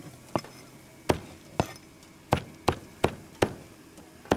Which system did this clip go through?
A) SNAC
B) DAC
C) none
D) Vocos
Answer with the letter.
C